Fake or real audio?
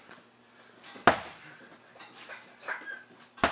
real